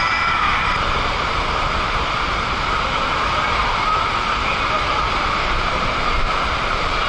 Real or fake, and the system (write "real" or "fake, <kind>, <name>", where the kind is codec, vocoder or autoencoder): fake, vocoder, BigVGAN v2